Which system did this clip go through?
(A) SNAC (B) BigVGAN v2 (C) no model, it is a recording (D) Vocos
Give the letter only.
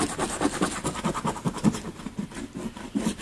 C